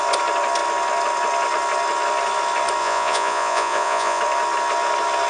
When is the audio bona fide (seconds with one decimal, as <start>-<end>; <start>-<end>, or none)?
0.0-2.8; 4.2-5.3

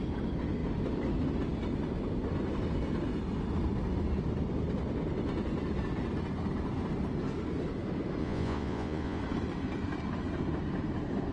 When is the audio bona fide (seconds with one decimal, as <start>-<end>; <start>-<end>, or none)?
0.0-8.2; 9.2-11.3